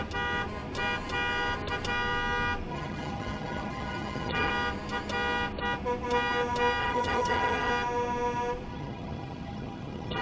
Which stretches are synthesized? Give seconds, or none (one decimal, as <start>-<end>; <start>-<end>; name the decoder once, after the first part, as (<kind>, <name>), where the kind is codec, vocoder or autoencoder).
2.7-4.5 (vocoder, HiFi-GAN); 6.8-7.7; 8.7-10.2